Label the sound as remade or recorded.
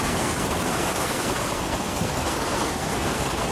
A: remade